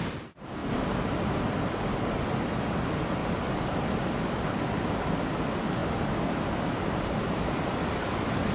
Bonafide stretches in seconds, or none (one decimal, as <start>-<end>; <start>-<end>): 0.0-3.2; 3.9-8.5